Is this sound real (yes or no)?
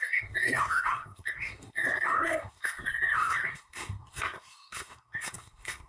no